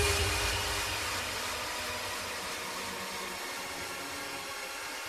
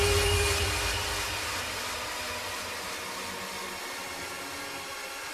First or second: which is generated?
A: first